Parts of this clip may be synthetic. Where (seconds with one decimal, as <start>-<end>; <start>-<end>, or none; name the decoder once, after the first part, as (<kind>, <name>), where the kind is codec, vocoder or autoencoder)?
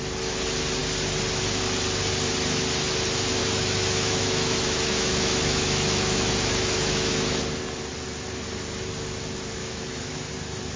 3.4-7.4 (autoencoder, DAC-VAE); 9.6-10.3